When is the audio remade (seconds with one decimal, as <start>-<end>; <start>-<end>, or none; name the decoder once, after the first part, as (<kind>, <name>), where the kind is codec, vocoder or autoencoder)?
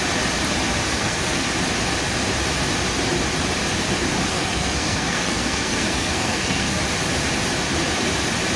0.8-1.4 (codec, SNAC); 4.3-6.8